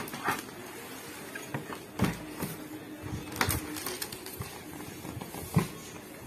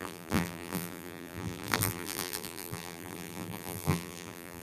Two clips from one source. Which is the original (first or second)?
first